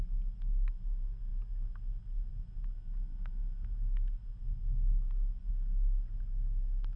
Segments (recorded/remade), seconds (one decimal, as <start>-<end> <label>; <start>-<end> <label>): 0.0-7.0 recorded